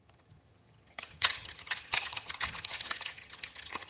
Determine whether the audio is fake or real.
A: fake